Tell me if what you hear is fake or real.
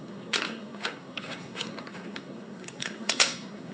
fake